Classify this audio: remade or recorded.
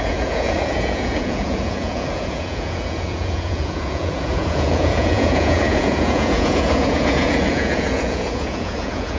remade